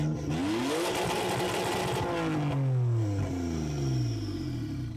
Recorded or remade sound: recorded